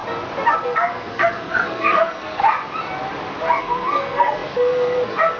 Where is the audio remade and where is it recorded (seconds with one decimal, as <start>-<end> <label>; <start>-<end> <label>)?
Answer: 0.0-0.5 recorded; 0.5-2.4 remade; 2.4-3.6 recorded; 3.6-5.4 remade